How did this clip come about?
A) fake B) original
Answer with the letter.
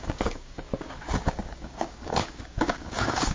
A